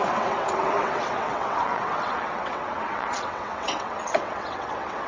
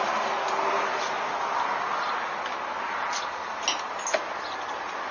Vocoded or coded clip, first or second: first